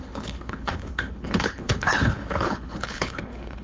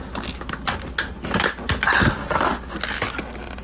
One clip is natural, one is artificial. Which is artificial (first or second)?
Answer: first